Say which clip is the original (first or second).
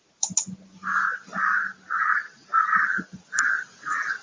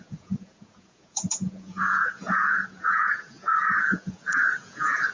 first